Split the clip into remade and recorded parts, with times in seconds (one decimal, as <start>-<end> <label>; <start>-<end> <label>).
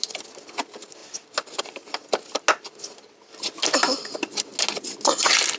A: 0.0-5.6 recorded